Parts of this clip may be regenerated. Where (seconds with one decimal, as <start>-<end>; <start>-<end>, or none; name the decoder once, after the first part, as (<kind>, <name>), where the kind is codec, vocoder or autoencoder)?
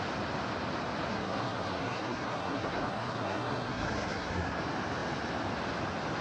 1.1-4.6 (codec, SNAC)